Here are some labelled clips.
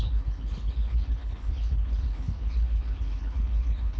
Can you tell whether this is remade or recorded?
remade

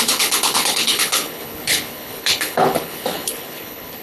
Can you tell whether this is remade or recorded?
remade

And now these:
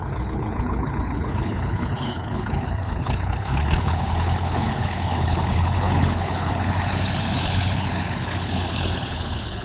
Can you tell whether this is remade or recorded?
remade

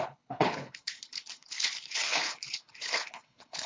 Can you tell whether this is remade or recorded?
remade